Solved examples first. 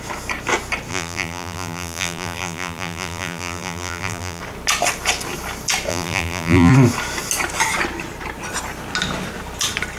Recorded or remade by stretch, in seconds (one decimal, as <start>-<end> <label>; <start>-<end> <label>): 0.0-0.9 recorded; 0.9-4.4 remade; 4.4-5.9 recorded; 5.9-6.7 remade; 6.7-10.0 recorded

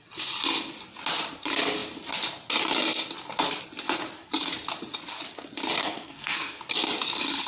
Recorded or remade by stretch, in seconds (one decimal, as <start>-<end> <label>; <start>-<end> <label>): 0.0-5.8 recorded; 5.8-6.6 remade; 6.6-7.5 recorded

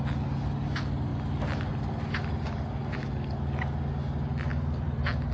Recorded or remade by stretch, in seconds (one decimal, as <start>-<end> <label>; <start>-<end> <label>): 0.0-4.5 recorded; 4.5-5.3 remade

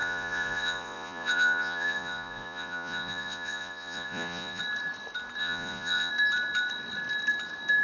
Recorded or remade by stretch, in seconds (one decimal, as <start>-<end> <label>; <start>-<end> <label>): 0.0-4.6 remade; 4.6-5.4 recorded; 5.4-6.1 remade; 6.1-7.8 recorded

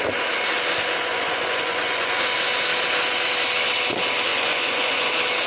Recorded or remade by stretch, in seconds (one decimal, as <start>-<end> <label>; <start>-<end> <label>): 0.0-1.1 recorded; 1.1-2.2 remade; 2.2-4.3 recorded; 4.3-5.1 remade; 5.1-5.5 recorded